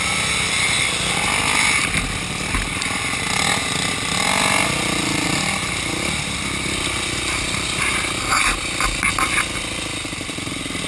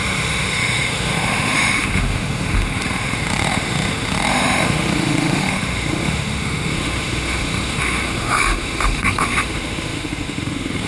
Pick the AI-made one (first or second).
second